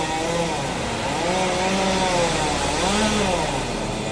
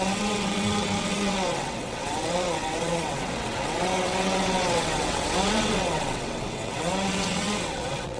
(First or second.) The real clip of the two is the first